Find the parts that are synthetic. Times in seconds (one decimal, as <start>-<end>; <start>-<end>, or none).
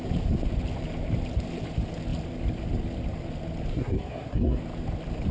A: 3.7-4.6